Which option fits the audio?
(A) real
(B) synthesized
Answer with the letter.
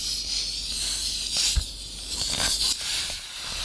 A